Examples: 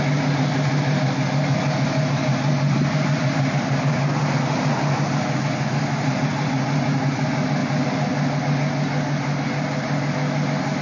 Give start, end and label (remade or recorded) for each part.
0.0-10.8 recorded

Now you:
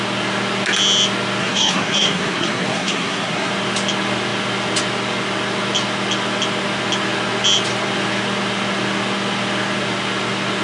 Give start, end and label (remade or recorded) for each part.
0.0-1.4 recorded; 1.4-3.5 remade; 3.5-10.6 recorded

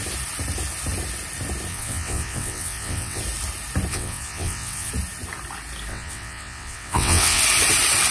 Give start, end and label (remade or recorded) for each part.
0.0-1.7 recorded; 1.7-3.2 remade; 3.2-3.9 recorded; 3.9-4.9 remade; 4.9-5.9 recorded; 5.9-7.4 remade; 7.4-8.1 recorded